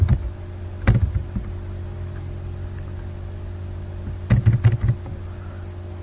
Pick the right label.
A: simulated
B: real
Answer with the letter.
B